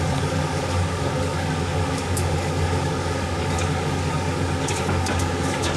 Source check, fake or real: fake